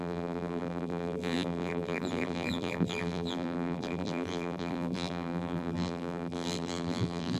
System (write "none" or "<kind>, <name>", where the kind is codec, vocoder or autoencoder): vocoder, BigVGAN v2